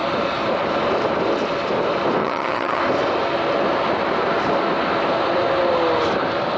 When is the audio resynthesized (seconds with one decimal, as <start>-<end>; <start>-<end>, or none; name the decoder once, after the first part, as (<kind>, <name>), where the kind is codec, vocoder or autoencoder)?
2.2-2.8 (vocoder, HiFi-GAN)